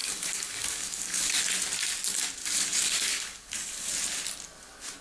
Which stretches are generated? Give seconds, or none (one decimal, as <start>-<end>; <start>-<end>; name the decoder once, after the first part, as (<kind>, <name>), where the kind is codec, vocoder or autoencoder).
0.0-1.4 (codec, DAC); 2.4-3.9

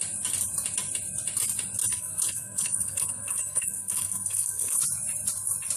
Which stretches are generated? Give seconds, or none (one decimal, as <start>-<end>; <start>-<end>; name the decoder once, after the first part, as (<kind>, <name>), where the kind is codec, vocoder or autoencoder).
1.8-4.8 (codec, SNAC)

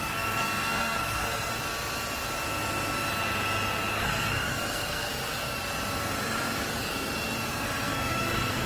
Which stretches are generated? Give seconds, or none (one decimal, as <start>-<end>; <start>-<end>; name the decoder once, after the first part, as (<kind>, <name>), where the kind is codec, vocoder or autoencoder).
0.0-1.5 (codec, SNAC); 3.9-5.1; 7.5-8.7

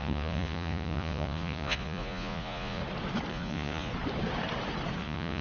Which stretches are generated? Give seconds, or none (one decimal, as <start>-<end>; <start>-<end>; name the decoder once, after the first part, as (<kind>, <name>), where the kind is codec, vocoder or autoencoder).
0.0-2.8 (vocoder, Vocos); 3.3-3.9; 5.0-5.4